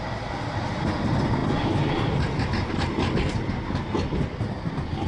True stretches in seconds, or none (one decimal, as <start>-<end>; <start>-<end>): 0.0-5.1